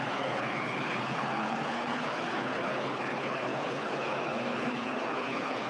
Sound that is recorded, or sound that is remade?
remade